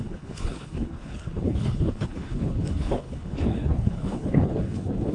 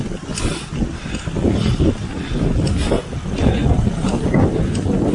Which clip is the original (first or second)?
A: second